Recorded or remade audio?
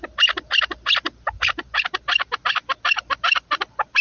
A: recorded